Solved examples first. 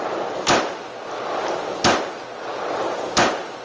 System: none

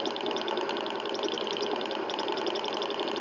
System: none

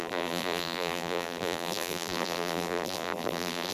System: vocoder, BigVGAN v2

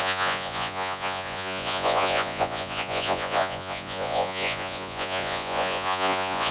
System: vocoder, Vocos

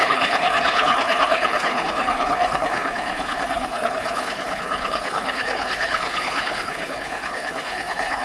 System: codec, HILCodec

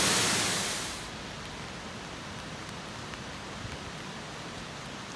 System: none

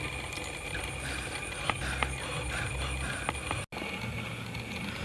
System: none